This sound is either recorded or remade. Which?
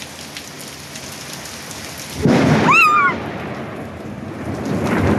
recorded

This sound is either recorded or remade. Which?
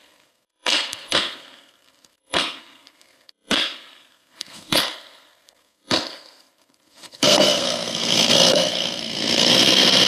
remade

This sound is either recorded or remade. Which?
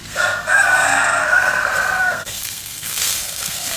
remade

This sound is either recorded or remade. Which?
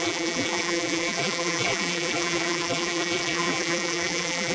remade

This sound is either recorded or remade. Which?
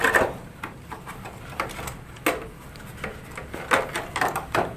recorded